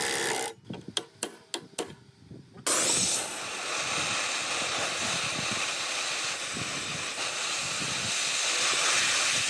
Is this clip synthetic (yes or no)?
no